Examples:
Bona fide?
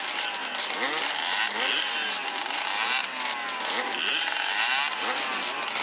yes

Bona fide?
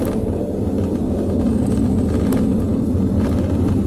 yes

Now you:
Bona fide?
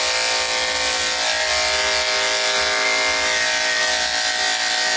yes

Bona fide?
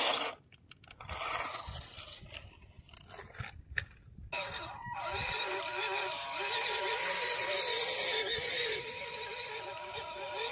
yes